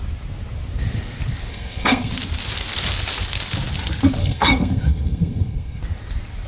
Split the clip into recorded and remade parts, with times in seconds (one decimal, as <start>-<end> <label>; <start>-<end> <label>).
0.0-1.5 recorded; 1.5-2.1 remade; 2.1-4.2 recorded; 4.2-5.8 remade; 5.8-6.5 recorded